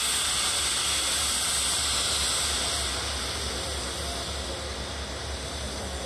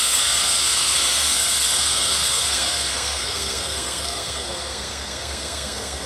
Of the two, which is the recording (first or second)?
first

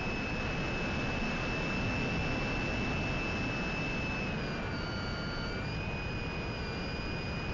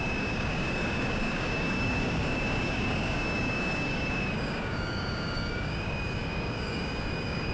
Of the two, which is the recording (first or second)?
first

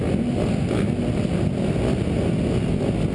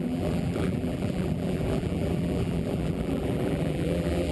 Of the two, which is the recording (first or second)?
first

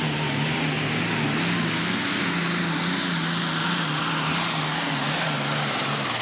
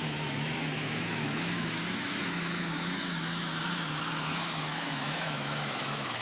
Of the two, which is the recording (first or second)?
first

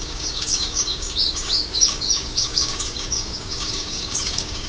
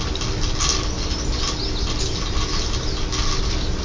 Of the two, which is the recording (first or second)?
second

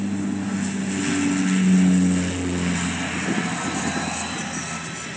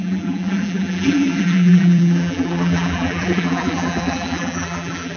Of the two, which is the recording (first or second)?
first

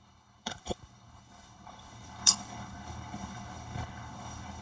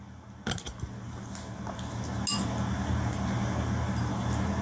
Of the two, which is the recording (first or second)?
second